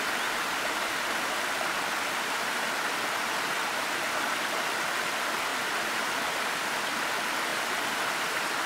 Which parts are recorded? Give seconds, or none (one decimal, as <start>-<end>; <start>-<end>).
0.0-5.5; 6.1-8.7